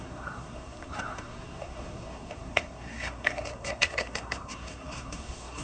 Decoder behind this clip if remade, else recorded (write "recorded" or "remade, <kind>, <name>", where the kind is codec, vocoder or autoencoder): remade, codec, SNAC